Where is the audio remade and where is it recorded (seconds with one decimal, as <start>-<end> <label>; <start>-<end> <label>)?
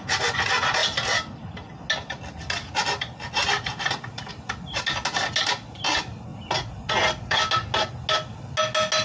0.0-9.0 recorded